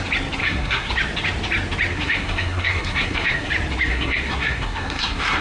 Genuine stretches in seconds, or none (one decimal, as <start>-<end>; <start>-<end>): 0.0-0.4; 0.9-1.9; 3.5-3.9